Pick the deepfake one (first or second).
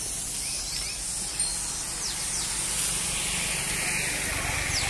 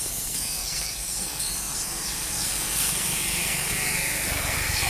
second